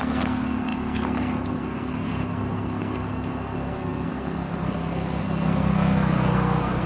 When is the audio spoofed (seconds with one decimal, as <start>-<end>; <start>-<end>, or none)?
0.0-6.9